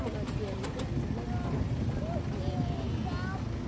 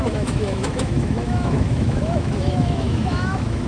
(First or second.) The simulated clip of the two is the second